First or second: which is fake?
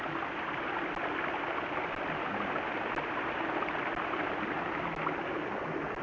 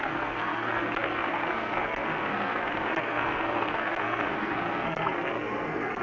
second